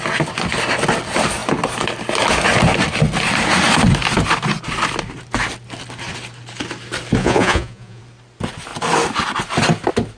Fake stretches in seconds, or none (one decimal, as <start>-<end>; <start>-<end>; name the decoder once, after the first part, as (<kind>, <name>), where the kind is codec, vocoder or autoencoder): 7.2-8.0 (vocoder, Vocos)